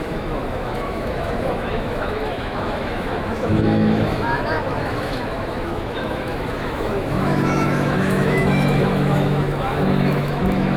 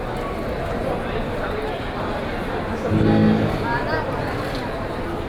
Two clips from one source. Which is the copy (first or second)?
first